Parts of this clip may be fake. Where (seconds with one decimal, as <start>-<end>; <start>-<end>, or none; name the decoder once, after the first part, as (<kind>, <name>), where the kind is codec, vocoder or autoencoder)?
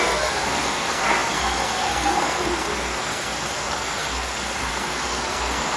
0.0-5.8 (codec, SNAC)